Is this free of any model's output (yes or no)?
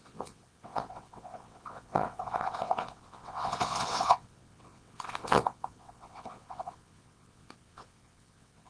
no